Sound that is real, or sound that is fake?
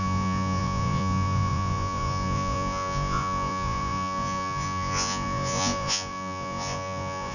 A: fake